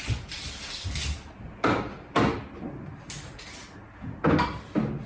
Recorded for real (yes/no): yes